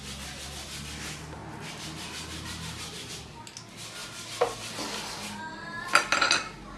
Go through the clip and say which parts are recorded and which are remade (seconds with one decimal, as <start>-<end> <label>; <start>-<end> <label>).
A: 0.0-6.8 recorded